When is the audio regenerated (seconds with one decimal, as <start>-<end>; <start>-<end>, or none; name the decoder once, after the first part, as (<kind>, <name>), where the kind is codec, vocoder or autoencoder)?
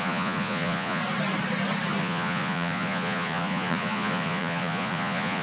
0.0-1.0 (vocoder, Vocos); 2.0-5.4